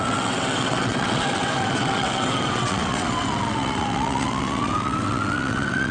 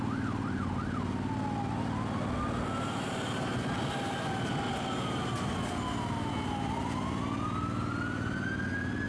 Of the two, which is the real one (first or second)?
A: second